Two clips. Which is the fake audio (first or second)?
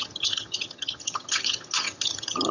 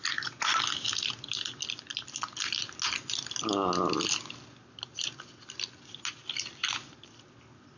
first